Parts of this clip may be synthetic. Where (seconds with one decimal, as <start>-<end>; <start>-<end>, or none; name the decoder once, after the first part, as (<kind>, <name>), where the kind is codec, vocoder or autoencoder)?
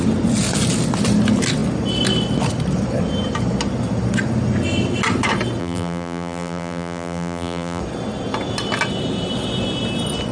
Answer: 5.6-7.8 (vocoder, BigVGAN v2)